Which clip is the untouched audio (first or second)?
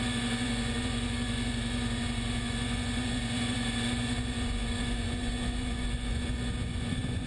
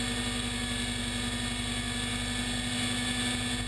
second